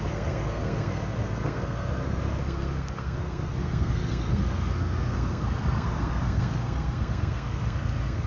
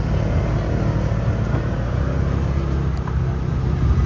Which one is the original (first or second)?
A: second